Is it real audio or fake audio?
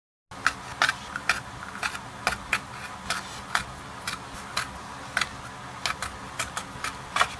real